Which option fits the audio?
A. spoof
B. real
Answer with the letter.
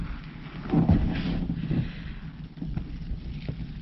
B